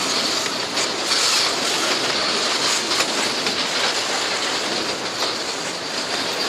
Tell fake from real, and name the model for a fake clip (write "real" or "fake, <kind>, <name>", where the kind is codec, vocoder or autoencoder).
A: real